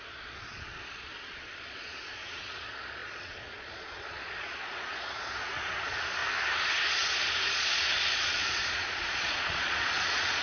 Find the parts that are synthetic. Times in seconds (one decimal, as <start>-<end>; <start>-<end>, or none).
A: 0.0-6.2; 6.9-10.4